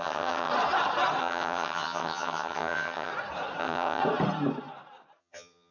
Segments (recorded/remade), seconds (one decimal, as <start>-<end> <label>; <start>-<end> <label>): 0.0-0.5 remade; 0.5-1.2 recorded; 1.2-3.1 remade; 3.1-3.6 recorded; 3.6-4.0 remade; 4.0-5.2 recorded; 5.2-5.7 remade